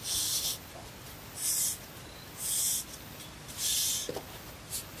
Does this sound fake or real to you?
real